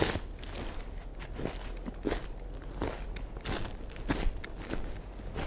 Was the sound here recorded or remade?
recorded